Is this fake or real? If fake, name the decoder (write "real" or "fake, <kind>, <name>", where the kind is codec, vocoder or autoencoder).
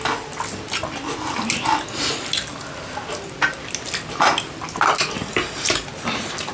real